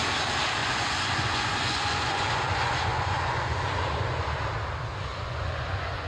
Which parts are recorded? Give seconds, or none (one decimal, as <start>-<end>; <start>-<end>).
0.0-0.6; 4.3-5.1

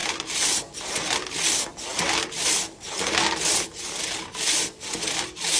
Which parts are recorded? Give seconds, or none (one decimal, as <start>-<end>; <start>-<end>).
0.0-5.6

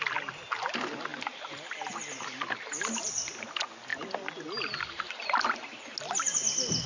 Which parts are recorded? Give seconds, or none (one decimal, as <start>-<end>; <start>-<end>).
0.0-6.9

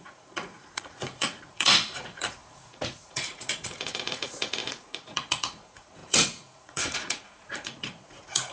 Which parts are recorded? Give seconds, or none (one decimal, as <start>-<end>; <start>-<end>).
none